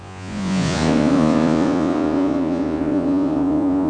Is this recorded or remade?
remade